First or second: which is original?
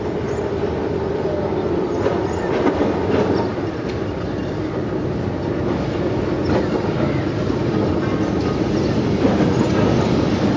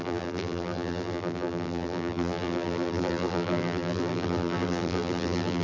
first